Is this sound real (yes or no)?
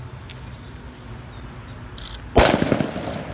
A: yes